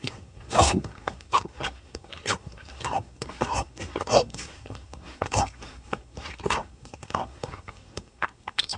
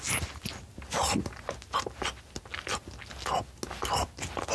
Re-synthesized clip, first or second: first